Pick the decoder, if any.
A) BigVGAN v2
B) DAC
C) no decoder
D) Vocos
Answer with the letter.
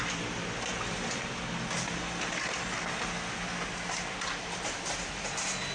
C